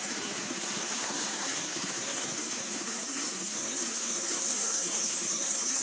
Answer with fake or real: fake